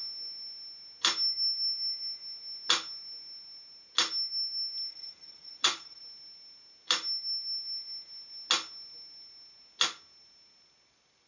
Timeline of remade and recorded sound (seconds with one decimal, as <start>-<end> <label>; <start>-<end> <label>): 0.0-4.9 recorded; 4.9-6.0 remade; 6.0-11.3 recorded